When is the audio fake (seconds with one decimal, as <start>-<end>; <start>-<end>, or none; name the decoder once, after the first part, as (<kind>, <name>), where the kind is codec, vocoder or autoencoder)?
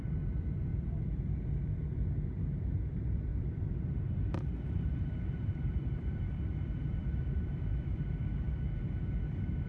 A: 0.7-1.4 (vocoder, BigVGAN v2); 3.3-7.9